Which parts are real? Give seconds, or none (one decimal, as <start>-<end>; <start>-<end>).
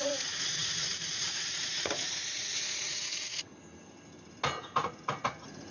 3.5-4.6